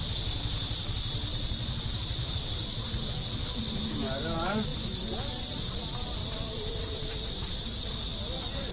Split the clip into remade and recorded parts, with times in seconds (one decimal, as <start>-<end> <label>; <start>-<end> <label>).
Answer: 0.0-1.3 recorded; 1.3-3.0 remade; 3.0-6.2 recorded; 6.2-7.1 remade; 7.1-8.7 recorded